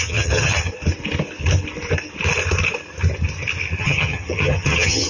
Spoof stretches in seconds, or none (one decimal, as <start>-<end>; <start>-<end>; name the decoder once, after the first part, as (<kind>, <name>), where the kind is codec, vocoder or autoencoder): 0.0-0.7 (vocoder, HiFi-GAN); 3.8-5.1